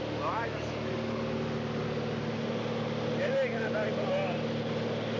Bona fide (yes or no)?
yes